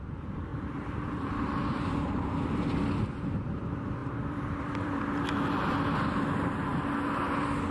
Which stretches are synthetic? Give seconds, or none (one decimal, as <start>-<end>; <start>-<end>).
0.5-1.5; 4.0-5.0

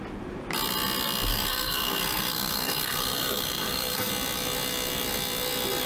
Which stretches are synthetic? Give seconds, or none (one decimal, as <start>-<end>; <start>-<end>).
1.3-4.1

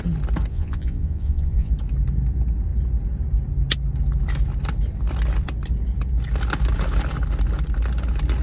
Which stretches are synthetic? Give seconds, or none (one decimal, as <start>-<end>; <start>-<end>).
0.5-1.7

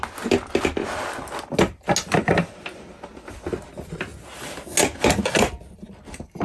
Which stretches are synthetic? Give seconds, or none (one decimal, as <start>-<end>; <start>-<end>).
none